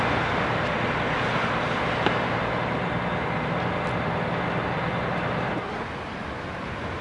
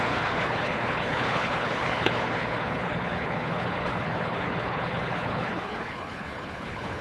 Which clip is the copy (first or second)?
second